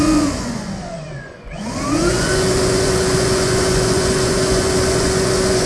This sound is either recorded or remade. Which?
remade